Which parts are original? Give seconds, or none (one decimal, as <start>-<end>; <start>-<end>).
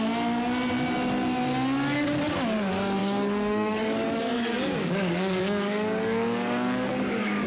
0.0-3.0